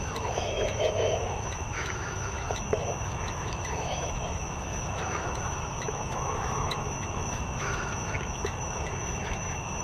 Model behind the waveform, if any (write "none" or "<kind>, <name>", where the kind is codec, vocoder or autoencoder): autoencoder, DAC-VAE